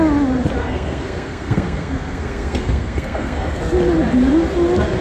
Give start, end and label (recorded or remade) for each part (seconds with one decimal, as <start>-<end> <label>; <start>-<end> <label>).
0.0-0.6 recorded; 0.6-3.6 remade; 3.6-5.0 recorded